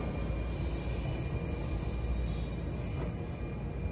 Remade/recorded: recorded